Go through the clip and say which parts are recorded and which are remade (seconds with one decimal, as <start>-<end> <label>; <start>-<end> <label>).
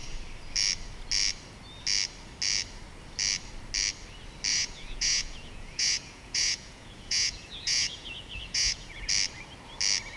0.0-4.5 recorded; 4.5-9.1 remade; 9.1-10.2 recorded